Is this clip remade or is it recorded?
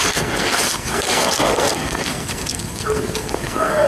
remade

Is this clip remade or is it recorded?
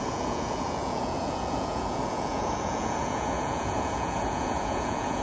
remade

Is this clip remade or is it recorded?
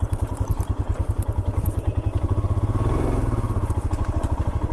remade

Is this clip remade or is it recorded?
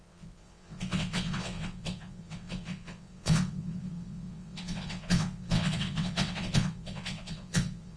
remade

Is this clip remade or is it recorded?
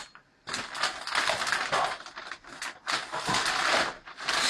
recorded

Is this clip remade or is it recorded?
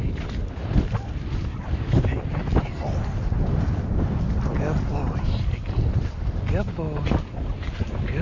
recorded